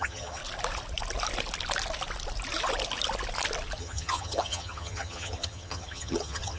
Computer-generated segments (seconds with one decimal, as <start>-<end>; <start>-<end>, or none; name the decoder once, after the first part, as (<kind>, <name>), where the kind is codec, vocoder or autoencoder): 0.0-0.4 (vocoder, HiFi-GAN); 3.8-6.6